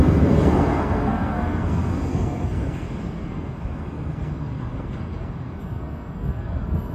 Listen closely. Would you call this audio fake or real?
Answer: fake